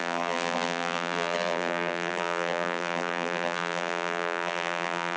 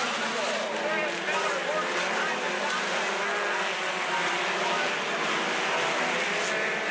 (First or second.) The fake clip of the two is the first